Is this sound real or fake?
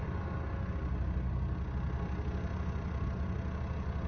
real